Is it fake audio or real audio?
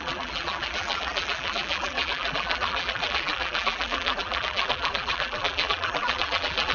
fake